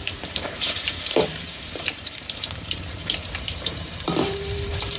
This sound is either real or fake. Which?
fake